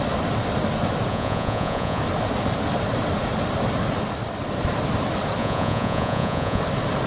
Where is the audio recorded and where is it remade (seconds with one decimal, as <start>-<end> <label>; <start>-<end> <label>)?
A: 0.0-1.1 recorded; 1.1-2.0 remade; 2.0-5.4 recorded; 5.4-6.6 remade; 6.6-7.1 recorded

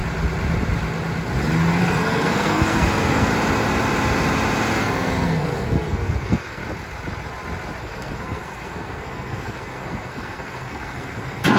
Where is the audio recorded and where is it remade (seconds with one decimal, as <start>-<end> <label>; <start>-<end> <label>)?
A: 0.0-1.8 recorded; 1.8-3.3 remade; 3.3-4.7 recorded; 4.7-6.6 remade; 6.6-7.8 recorded; 7.8-11.6 remade

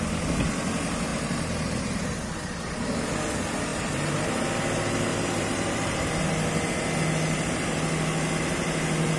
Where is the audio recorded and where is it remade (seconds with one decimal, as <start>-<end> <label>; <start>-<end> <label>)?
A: 0.0-1.1 recorded; 1.1-2.2 remade; 2.2-3.7 recorded; 3.7-4.4 remade; 4.4-5.1 recorded; 5.1-6.1 remade; 6.1-9.2 recorded